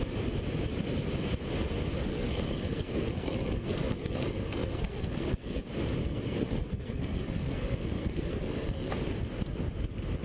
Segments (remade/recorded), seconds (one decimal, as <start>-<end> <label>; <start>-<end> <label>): 0.0-2.1 recorded; 2.1-5.6 remade; 5.6-6.0 recorded; 6.0-8.9 remade; 8.9-10.2 recorded